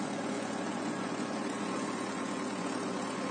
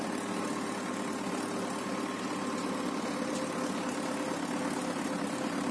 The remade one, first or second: first